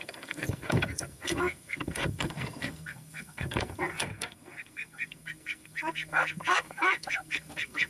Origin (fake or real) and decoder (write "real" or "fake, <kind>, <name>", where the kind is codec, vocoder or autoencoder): fake, codec, SNAC